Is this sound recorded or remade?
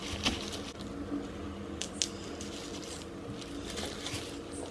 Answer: recorded